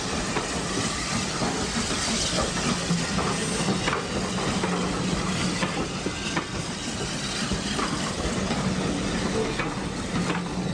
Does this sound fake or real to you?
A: real